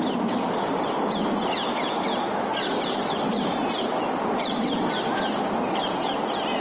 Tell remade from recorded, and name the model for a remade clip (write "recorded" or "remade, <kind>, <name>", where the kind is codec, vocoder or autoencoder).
recorded